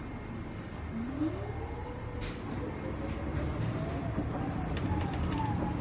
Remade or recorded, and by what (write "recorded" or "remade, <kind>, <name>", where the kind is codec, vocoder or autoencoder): recorded